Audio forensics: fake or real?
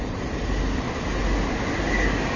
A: real